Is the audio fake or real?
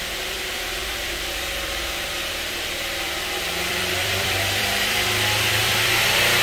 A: fake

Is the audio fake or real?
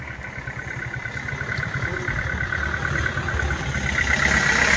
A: real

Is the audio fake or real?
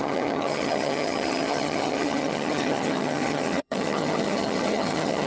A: fake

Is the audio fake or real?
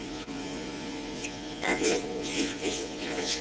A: fake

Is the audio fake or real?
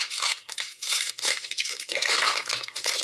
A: fake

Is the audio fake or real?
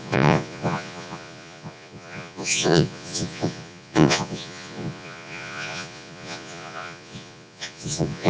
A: fake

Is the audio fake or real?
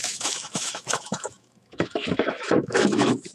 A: fake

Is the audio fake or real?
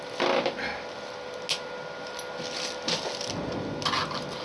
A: real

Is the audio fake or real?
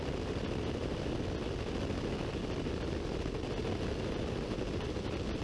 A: real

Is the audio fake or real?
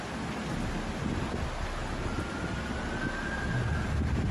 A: real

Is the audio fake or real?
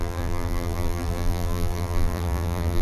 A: fake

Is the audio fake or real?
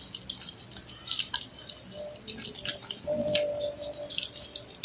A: real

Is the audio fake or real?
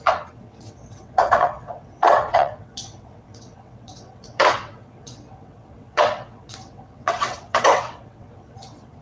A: fake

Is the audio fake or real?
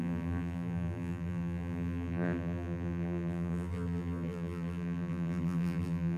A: fake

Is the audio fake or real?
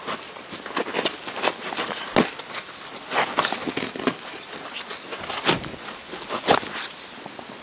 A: real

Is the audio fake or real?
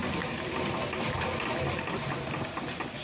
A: real